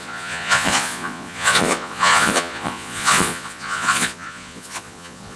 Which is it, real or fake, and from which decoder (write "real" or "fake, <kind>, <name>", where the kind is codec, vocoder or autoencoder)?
fake, vocoder, Vocos